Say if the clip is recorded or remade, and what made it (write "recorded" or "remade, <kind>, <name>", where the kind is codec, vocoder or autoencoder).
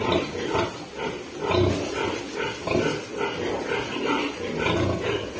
recorded